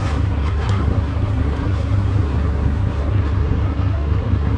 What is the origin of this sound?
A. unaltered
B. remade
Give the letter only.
B